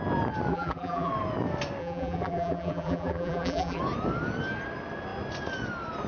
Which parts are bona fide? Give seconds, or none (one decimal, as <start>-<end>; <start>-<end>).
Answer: 0.0-0.5; 1.1-1.8; 3.8-6.1

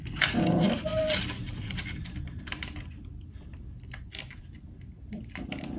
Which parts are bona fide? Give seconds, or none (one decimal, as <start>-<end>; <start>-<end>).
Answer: none

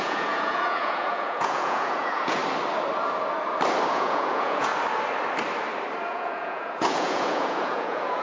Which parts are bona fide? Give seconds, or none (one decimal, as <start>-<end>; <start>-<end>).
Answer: 2.4-3.9; 4.7-6.0

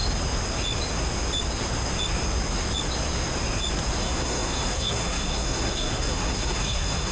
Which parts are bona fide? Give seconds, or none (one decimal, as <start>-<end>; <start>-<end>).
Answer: 0.0-4.0

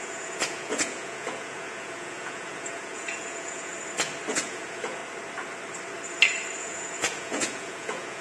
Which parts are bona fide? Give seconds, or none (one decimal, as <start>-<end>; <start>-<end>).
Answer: 3.7-4.3; 5.0-6.6

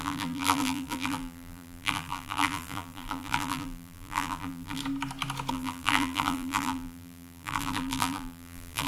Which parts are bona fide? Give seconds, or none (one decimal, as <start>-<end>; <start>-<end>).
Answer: 4.8-5.5

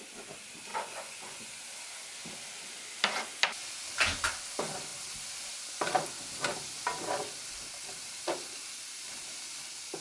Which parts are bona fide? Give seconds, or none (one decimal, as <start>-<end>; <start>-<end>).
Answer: 0.0-0.7; 1.6-10.0

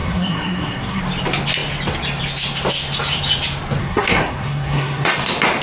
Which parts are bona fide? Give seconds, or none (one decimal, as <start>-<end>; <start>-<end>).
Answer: 1.0-3.8; 5.1-5.6